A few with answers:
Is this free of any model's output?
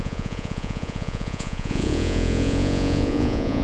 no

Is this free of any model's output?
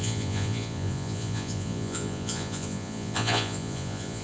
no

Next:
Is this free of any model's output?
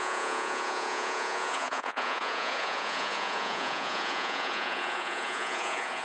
no